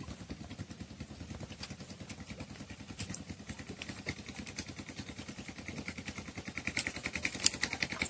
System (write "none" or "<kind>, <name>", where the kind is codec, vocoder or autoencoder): none